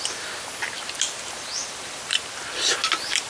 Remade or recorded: recorded